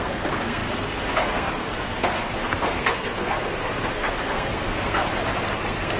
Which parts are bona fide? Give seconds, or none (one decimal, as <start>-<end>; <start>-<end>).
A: 5.1-5.6